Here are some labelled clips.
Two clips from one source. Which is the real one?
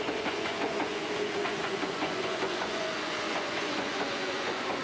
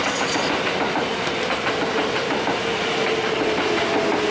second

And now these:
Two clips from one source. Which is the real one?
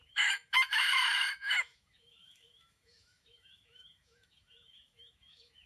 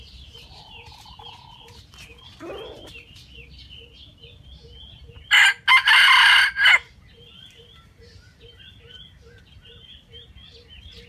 second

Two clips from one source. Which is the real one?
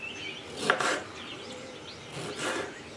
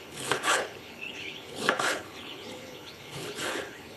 first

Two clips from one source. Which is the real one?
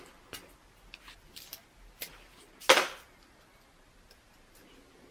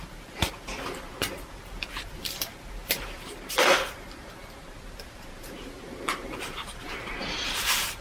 first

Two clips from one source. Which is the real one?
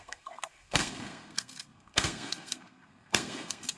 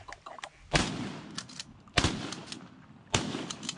second